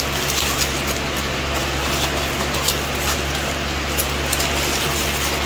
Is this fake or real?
real